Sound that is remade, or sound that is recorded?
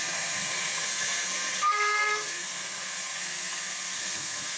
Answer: remade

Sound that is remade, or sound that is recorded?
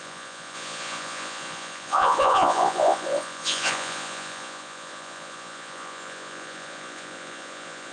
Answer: remade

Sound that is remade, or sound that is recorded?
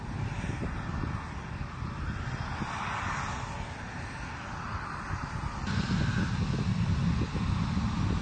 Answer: recorded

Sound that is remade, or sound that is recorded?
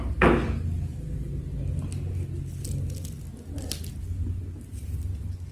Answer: recorded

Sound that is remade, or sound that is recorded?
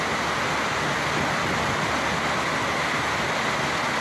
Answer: recorded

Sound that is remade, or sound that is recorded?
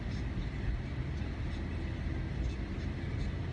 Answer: recorded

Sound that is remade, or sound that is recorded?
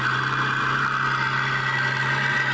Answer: recorded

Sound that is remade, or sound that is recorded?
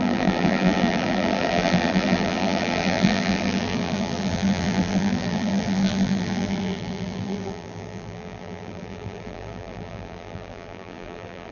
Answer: remade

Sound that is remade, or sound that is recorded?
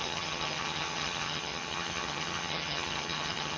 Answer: remade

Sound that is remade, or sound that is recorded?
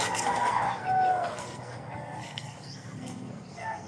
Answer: remade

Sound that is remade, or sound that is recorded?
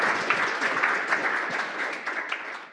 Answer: remade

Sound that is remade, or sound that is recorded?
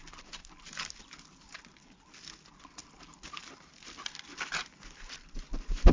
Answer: recorded